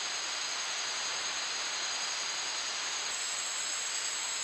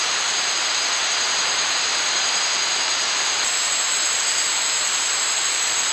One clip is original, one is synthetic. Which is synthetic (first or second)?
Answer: second